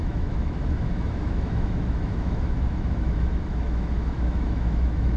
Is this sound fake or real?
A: fake